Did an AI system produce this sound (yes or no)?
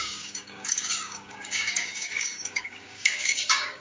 yes